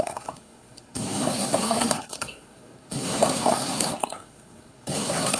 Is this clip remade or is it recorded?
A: remade